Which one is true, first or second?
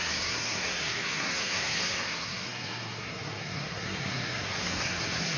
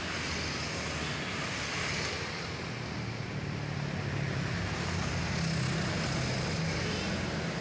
second